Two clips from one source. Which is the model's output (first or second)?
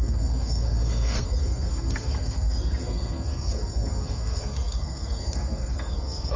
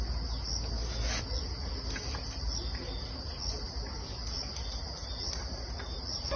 first